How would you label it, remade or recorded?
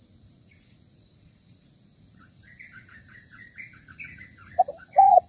remade